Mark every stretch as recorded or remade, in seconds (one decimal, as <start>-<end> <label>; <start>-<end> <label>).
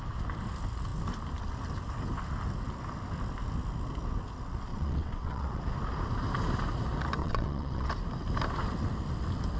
0.0-4.7 recorded; 4.7-5.6 remade; 5.6-7.2 recorded; 7.2-7.9 remade; 7.9-9.6 recorded